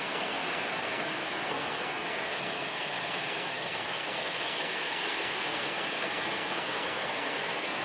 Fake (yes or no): yes